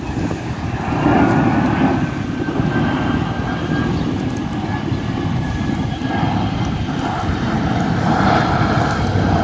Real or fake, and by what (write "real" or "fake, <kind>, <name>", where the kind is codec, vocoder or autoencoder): real